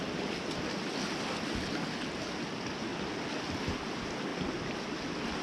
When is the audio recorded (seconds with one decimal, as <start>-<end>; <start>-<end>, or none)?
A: 0.0-5.4